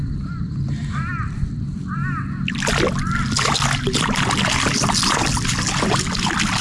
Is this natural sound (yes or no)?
yes